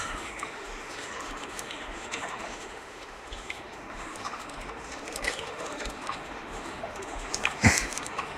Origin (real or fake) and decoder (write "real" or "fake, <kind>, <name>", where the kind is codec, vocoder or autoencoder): fake, autoencoder, DAC-VAE